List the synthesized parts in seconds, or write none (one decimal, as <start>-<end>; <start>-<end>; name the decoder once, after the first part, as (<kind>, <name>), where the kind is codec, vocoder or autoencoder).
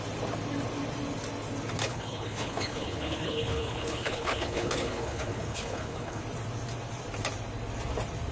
1.8-6.2 (codec, HILCodec)